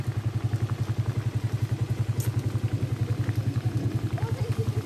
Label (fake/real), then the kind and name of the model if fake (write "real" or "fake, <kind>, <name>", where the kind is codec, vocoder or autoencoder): real